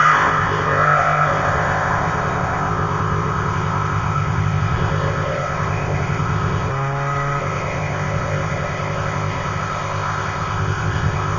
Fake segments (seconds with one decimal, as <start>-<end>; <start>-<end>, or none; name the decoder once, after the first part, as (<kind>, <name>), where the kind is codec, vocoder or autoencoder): 0.0-6.7 (codec, ZipCodec); 7.4-11.4